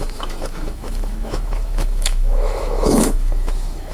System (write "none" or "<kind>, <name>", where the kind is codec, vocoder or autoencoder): autoencoder, DAC-VAE